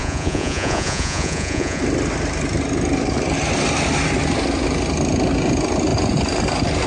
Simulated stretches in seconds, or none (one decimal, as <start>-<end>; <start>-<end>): 0.0-1.8